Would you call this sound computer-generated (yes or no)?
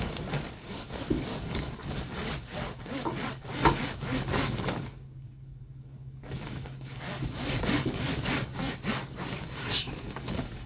yes